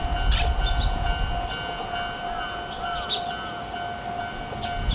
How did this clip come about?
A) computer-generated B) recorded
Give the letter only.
B